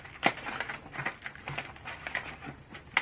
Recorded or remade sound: recorded